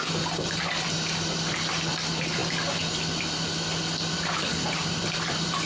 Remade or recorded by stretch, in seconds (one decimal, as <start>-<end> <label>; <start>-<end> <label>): 0.0-5.7 recorded